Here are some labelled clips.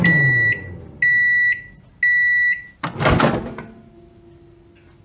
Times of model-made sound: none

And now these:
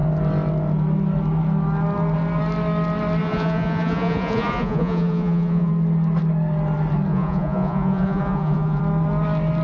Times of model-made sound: 3.2-5.7 (vocoder, Vocos); 7.1-8.8

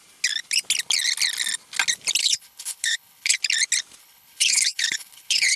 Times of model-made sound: 2.2-3.4 (codec, HILCodec); 4.0-5.6